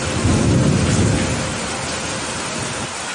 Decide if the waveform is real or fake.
real